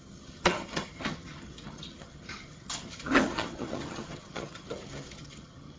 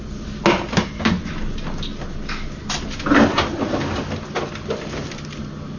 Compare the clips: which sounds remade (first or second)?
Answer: first